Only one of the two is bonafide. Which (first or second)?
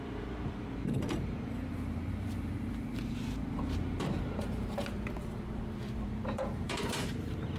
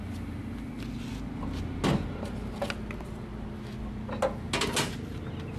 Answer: second